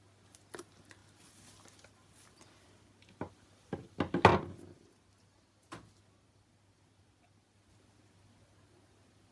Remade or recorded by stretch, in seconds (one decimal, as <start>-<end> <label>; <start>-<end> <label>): 0.0-9.3 recorded